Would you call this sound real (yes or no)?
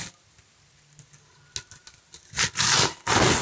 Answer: yes